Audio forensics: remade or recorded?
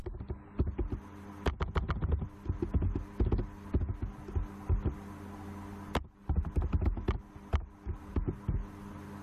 recorded